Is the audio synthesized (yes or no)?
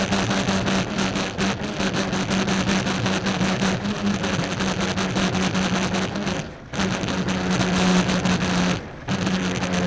no